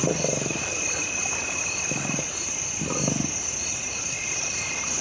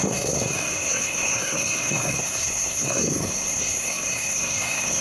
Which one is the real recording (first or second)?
first